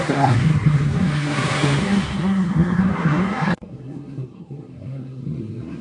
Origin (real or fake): fake